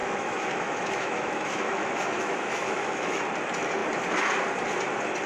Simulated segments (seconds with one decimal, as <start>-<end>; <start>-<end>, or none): 0.0-3.2